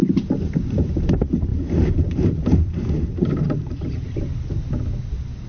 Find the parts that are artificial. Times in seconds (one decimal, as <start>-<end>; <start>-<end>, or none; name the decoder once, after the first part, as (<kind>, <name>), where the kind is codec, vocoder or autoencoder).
0.0-1.0 (vocoder, BigVGAN v2); 1.5-4.2